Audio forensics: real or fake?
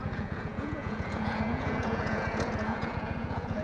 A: fake